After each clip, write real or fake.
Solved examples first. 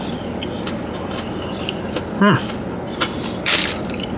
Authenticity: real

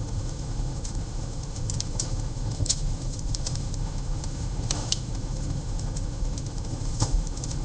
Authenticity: fake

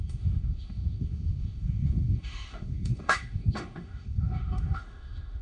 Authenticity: fake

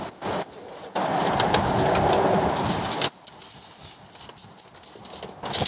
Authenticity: real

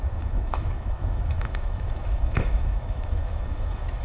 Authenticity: fake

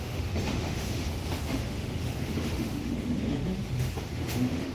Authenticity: fake